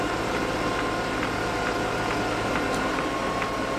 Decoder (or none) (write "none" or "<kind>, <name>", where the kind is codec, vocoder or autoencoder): none